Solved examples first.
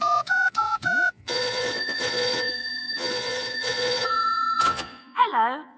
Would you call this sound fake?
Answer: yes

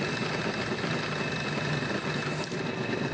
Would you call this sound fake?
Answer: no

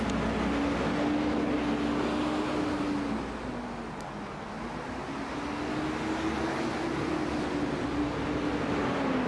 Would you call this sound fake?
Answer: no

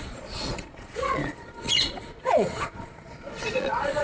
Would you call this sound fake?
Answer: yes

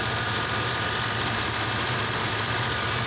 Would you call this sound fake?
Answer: no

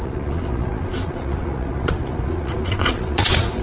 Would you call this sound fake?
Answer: yes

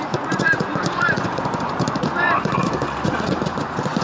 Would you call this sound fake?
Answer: yes